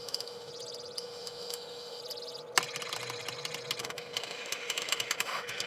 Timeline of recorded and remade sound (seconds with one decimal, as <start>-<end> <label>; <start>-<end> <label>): 0.0-0.5 remade; 0.5-1.0 recorded; 1.0-2.0 remade; 2.0-3.8 recorded; 3.8-5.7 remade